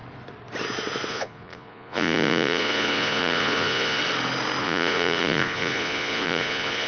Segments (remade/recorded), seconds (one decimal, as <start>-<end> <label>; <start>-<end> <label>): 0.0-1.1 recorded; 1.1-4.0 remade; 4.0-4.6 recorded; 4.6-6.9 remade